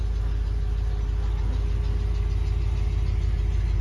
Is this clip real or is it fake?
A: real